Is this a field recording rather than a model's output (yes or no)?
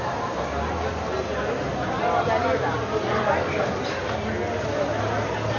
yes